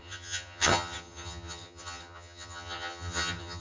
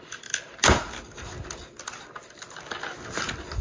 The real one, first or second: second